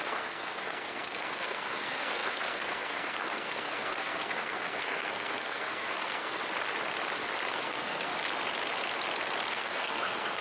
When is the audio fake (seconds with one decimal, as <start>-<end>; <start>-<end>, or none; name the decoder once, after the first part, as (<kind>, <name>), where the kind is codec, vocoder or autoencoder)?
0.0-6.4 (codec, SNAC); 7.5-8.1; 9.5-10.4